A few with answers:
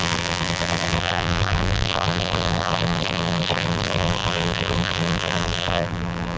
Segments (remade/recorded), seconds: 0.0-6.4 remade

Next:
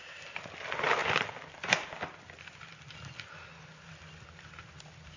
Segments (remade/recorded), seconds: 0.0-5.2 recorded